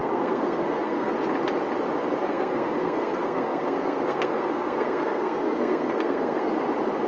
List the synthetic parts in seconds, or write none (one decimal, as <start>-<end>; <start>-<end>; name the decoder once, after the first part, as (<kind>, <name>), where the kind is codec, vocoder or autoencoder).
0.0-1.1 (codec, SNAC); 2.2-6.5